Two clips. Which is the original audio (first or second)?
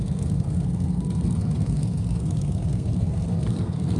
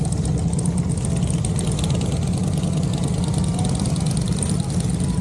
second